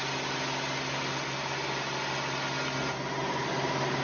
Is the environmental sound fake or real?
real